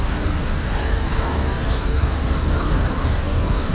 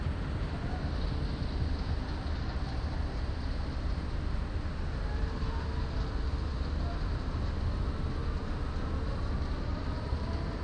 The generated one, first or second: first